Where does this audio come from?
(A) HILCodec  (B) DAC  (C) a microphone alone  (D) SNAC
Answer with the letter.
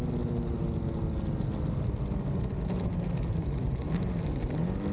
C